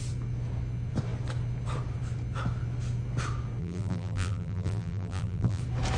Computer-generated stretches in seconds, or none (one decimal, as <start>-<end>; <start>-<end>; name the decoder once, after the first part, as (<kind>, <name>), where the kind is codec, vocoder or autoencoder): 3.6-5.6 (vocoder, BigVGAN v2)